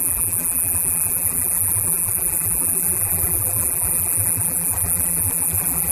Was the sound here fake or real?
fake